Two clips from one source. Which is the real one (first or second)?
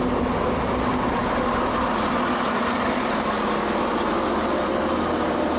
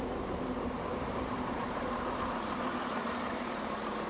first